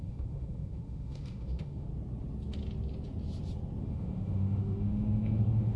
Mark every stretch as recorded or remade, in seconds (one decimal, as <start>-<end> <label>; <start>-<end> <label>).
0.0-1.9 remade; 1.9-3.8 recorded; 3.8-5.8 remade